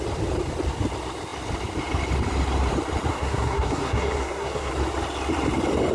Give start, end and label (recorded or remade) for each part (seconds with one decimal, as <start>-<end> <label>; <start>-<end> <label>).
0.0-3.1 recorded; 3.1-4.7 remade; 4.7-5.9 recorded